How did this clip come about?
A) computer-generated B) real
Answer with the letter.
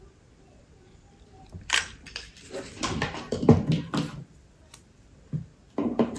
A